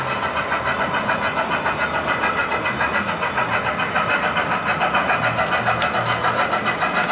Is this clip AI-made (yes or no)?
no